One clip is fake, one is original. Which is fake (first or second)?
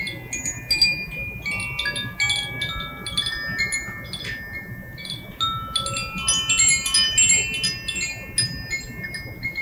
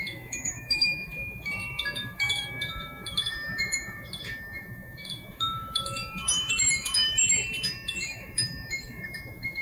second